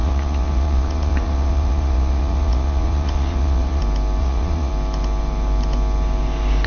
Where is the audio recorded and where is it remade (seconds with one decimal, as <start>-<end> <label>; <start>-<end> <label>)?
0.0-3.8 remade; 3.8-4.2 recorded; 4.2-4.7 remade; 4.7-6.7 recorded